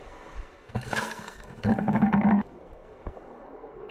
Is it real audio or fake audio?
fake